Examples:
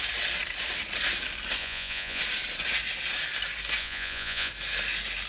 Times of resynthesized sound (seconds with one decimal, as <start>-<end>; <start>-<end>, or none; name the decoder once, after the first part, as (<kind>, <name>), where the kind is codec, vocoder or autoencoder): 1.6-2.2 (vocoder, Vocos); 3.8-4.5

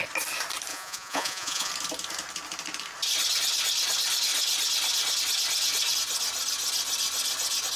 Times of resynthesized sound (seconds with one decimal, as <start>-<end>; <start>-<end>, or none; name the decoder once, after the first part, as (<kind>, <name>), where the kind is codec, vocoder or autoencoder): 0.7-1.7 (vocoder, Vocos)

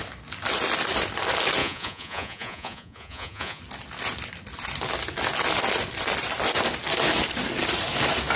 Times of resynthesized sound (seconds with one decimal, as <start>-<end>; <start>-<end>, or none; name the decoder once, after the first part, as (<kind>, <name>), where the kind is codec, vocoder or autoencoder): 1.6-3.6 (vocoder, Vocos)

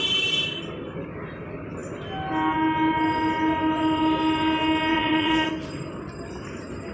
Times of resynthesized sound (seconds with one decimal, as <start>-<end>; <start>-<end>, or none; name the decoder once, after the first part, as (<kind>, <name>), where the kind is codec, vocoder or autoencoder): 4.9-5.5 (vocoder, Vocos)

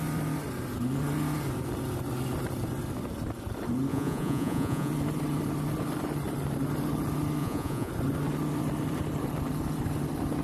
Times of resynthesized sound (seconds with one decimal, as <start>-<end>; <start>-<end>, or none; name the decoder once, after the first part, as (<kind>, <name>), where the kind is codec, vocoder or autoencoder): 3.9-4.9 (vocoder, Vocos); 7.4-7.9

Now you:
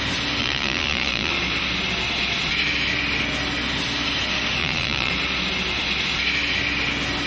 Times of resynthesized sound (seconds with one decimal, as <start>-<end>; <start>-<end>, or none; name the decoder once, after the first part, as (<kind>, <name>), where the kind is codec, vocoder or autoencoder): 0.4-1.3 (vocoder, Vocos); 4.6-5.1

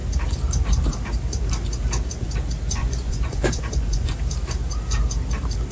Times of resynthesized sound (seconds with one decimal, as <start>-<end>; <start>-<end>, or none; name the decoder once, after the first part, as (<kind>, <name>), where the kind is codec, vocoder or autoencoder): 2.8-4.1 (vocoder, Vocos)